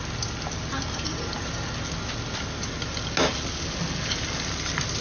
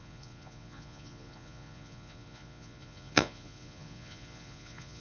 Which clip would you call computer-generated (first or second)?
second